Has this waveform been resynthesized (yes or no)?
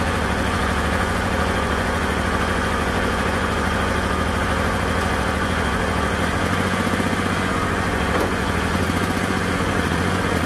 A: yes